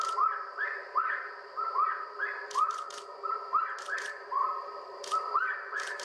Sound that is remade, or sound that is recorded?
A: remade